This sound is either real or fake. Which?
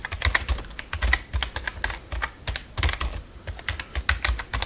real